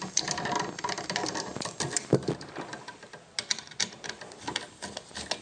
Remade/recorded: recorded